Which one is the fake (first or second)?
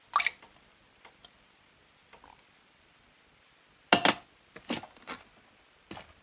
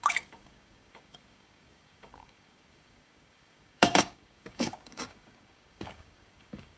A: second